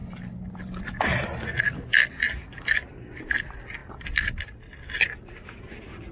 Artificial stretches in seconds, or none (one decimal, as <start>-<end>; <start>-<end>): 2.8-3.4